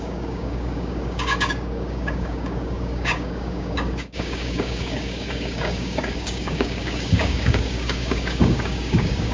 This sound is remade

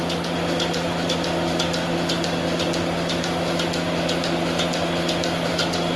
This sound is recorded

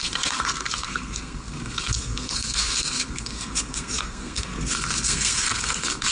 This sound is remade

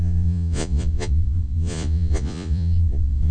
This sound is remade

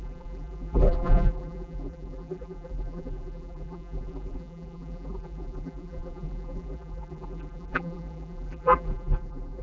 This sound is remade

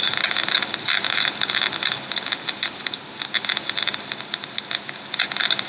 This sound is recorded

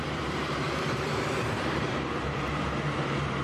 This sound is remade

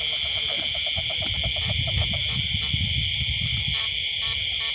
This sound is recorded